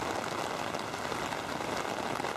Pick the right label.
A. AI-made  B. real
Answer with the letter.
B